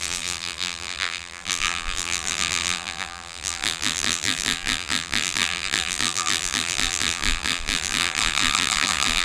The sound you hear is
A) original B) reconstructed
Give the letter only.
B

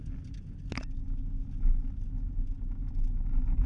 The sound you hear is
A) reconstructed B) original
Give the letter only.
B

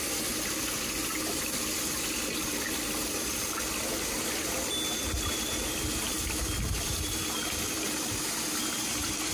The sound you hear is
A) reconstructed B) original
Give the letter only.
B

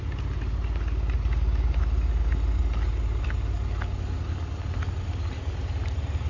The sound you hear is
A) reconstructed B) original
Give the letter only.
B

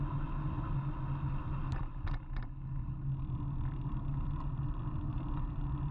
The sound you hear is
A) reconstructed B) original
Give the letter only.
B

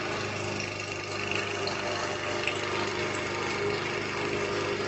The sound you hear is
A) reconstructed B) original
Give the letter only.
B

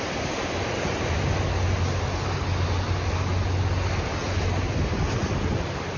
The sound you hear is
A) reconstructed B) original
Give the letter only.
B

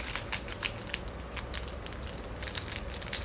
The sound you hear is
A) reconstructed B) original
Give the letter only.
B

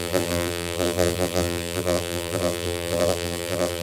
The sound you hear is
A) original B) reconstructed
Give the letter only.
B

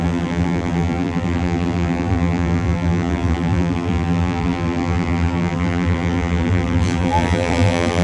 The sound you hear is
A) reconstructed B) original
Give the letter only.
A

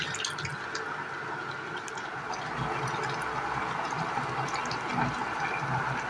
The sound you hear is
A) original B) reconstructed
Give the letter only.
A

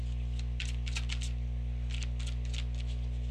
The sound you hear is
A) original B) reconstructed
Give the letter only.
A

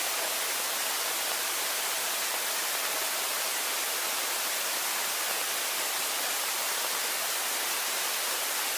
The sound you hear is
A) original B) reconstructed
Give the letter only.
B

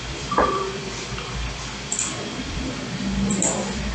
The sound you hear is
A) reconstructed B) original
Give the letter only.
A